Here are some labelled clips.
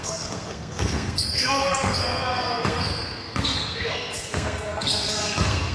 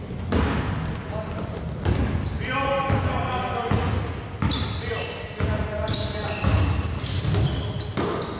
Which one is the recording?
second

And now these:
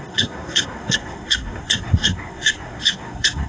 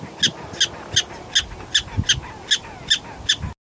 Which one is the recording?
second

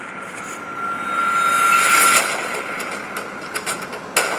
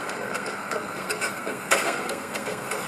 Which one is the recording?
first